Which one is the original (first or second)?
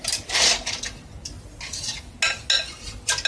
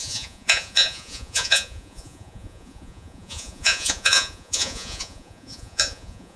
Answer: first